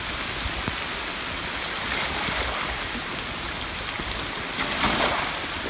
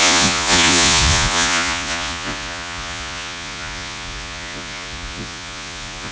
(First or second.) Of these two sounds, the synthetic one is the second